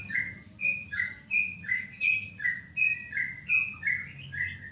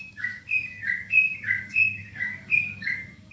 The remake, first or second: second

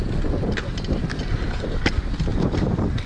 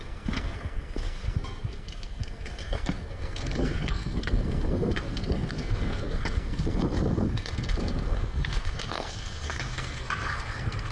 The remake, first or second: second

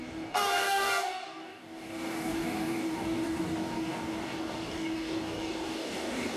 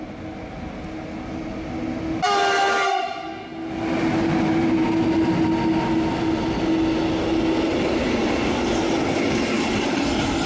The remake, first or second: first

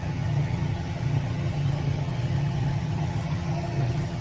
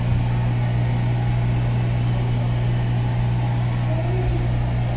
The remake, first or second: first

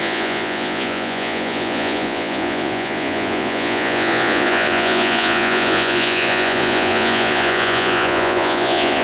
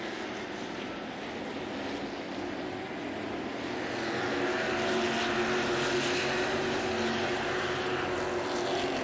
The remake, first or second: first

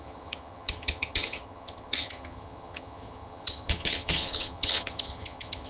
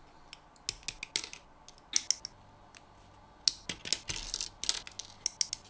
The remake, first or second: first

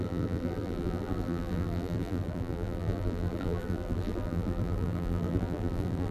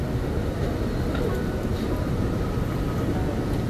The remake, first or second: first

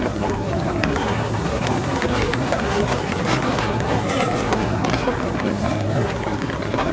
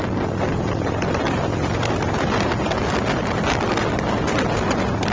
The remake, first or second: first